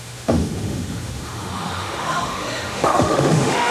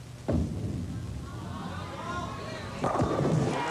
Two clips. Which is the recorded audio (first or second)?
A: second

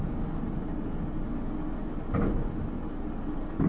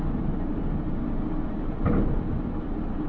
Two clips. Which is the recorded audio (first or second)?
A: first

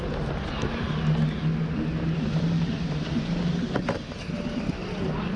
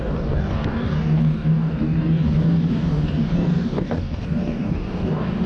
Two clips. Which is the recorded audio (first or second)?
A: first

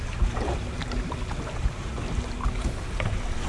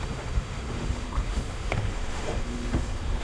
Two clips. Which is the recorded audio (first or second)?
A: first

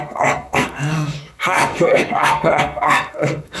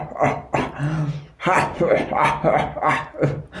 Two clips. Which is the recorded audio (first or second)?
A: second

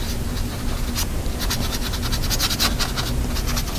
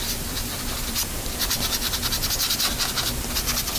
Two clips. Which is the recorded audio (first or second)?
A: first